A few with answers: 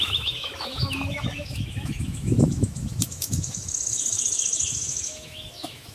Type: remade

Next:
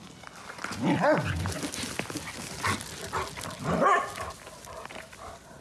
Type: recorded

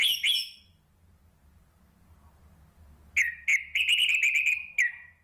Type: recorded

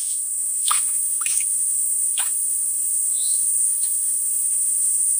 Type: remade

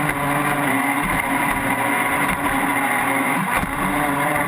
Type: recorded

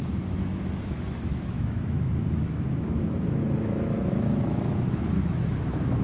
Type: remade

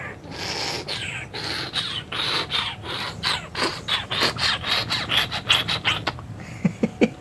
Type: recorded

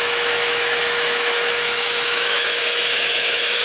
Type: remade